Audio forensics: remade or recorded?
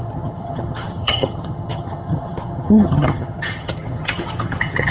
remade